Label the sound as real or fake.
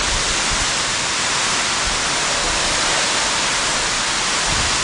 real